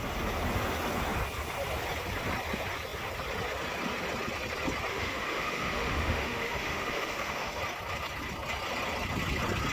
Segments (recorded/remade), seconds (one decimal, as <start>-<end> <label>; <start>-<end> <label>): 0.0-4.9 recorded; 4.9-7.6 remade; 7.6-9.7 recorded